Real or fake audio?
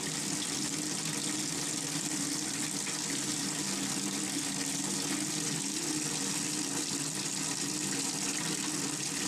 real